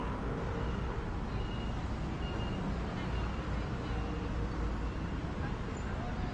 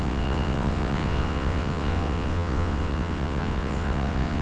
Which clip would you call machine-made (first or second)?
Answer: second